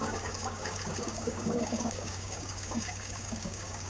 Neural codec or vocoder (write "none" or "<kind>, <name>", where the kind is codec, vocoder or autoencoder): codec, DAC